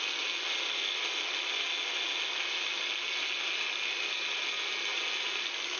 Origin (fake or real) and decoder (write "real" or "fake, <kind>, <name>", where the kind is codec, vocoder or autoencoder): real